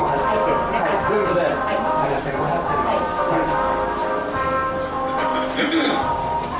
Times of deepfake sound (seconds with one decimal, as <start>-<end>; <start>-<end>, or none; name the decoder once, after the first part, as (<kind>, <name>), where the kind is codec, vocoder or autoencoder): 0.0-5.3 (vocoder, BigVGAN v2); 5.9-6.6